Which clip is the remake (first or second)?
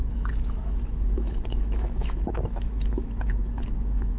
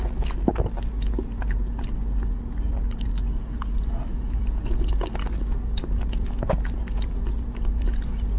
first